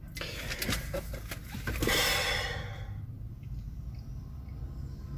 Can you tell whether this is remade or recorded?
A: recorded